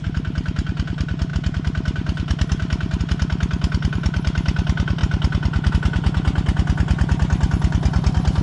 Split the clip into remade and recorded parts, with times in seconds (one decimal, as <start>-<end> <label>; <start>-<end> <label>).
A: 0.0-8.4 recorded